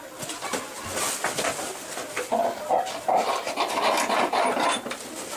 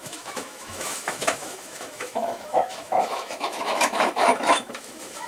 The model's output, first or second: second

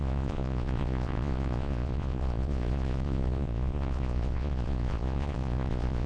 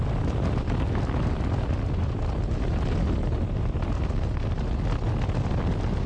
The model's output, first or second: first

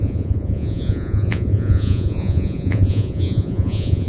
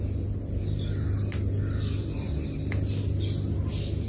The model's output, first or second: first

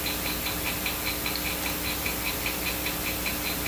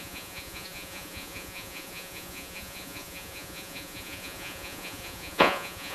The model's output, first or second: second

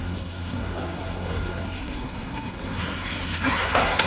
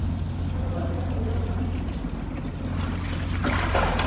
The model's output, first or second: first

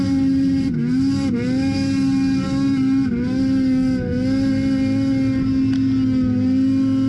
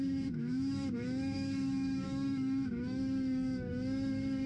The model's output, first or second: second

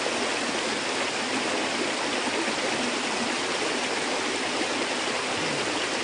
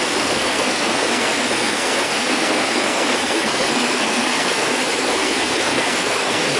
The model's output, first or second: second